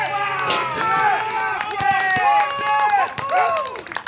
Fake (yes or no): no